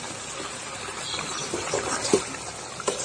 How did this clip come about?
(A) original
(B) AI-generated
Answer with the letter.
A